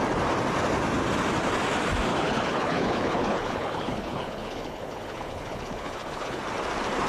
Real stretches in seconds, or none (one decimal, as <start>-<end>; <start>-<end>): 0.0-2.1; 6.4-7.1